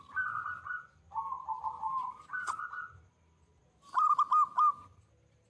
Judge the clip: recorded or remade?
recorded